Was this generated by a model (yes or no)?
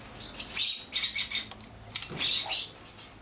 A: no